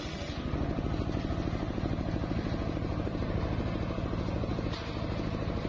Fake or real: real